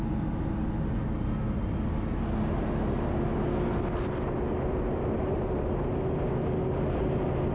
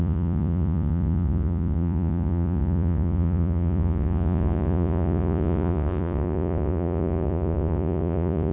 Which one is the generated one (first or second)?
second